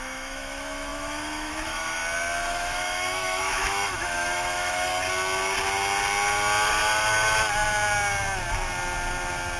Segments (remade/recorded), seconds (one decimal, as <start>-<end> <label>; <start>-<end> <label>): 0.0-2.0 remade; 2.0-2.5 recorded; 2.5-4.9 remade; 4.9-9.6 recorded